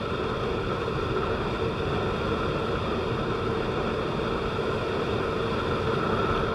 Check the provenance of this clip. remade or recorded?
recorded